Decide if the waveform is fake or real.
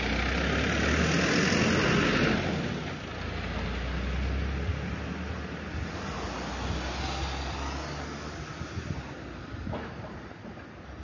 real